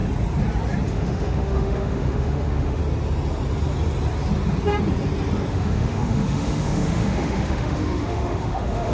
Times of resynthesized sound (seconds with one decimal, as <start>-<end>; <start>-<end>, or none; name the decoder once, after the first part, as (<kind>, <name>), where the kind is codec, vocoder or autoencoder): 0.9-2.8 (autoencoder, DAC-VAE); 5.5-8.9